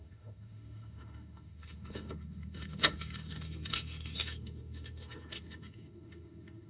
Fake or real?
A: fake